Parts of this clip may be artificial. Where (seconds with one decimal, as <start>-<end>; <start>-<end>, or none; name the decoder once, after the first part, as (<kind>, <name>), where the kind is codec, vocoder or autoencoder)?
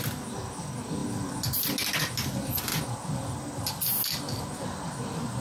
none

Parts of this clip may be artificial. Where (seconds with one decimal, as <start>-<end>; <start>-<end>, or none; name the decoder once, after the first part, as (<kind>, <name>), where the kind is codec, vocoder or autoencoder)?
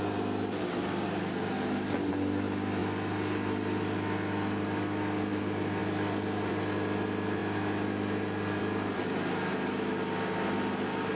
none